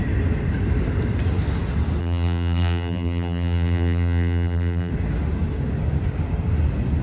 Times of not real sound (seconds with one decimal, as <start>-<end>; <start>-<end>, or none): 2.0-4.9